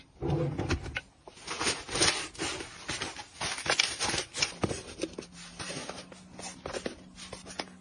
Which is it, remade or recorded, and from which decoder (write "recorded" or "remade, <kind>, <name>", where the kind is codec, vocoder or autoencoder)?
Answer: recorded